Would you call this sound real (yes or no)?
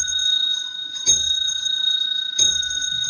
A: no